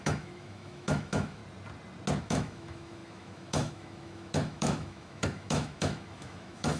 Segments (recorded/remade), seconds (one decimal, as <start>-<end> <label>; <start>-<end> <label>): 0.0-1.4 remade; 1.4-2.2 recorded; 2.2-6.8 remade

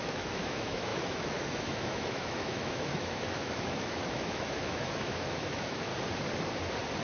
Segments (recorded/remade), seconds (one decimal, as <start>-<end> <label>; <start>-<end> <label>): 0.0-5.9 remade; 5.9-7.0 recorded

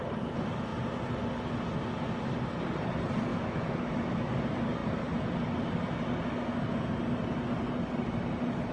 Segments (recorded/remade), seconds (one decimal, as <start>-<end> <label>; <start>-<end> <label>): 0.0-3.3 recorded; 3.3-4.3 remade; 4.3-8.7 recorded

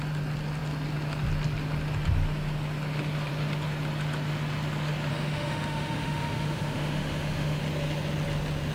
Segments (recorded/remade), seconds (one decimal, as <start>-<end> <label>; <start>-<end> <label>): 0.0-5.1 recorded; 5.1-7.6 remade; 7.6-8.7 recorded

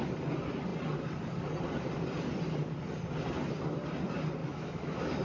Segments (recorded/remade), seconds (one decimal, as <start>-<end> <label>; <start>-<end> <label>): 0.0-4.4 recorded; 4.4-5.2 remade

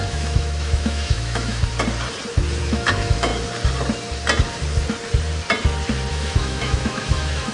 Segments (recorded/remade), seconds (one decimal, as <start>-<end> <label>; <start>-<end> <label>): 0.0-1.6 remade; 1.6-2.6 recorded; 2.6-3.3 remade; 3.3-6.1 recorded; 6.1-7.5 remade